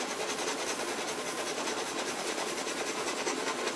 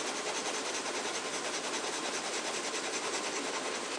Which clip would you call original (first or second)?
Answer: second